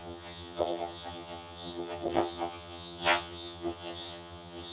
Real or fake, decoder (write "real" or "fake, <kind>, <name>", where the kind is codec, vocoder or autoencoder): fake, vocoder, HiFi-GAN